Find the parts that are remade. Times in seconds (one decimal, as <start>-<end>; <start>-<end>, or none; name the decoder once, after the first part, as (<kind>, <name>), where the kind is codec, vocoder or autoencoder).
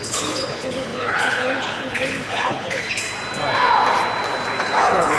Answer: 0.0-3.0 (codec, HILCodec); 4.6-5.2